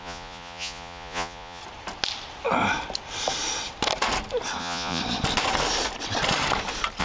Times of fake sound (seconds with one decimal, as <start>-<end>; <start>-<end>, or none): 0.0-1.6; 4.6-5.0